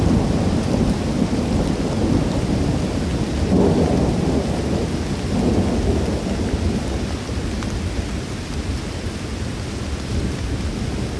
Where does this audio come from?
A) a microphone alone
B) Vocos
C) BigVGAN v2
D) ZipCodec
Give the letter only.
A